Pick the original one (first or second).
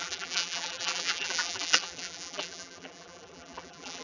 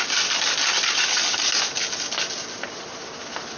second